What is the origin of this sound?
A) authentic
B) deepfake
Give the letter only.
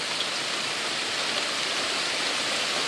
A